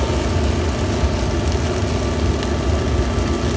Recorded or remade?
recorded